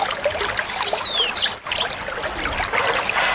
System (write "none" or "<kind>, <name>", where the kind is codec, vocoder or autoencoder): none